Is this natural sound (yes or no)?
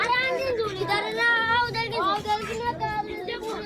yes